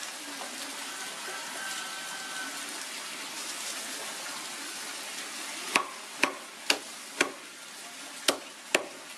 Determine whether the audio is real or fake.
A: real